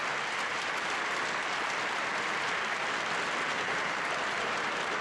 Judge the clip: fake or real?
real